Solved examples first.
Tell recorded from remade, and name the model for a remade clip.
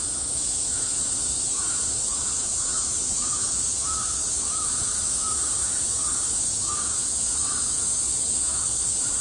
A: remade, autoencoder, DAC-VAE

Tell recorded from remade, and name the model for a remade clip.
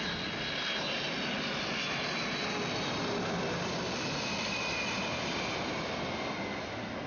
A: recorded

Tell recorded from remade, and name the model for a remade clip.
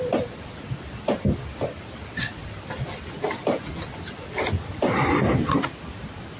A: recorded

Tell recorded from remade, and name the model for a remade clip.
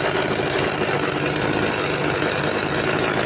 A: recorded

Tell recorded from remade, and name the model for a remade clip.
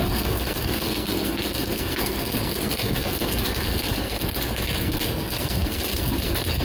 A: remade, codec, SNAC